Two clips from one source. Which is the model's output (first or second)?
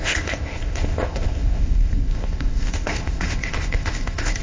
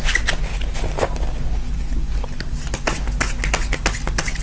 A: first